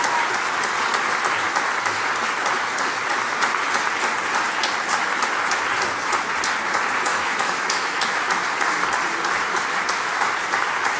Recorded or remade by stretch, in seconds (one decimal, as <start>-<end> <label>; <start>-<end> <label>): 0.0-7.1 recorded; 7.1-8.2 remade; 8.2-11.0 recorded